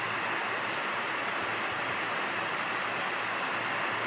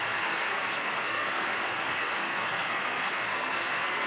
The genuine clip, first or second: first